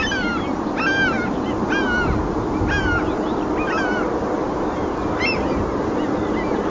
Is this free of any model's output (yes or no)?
yes